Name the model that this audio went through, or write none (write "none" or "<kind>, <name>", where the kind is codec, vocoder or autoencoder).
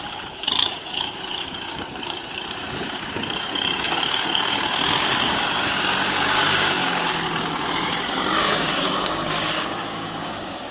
codec, DAC